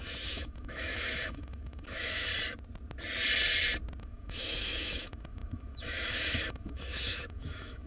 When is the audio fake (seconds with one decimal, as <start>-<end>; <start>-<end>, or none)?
0.0-2.3; 4.0-7.9